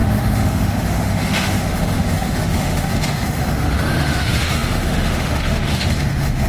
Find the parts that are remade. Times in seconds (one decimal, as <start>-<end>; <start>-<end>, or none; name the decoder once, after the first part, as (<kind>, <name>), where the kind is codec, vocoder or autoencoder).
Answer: 0.0-6.5 (autoencoder, DAC-VAE)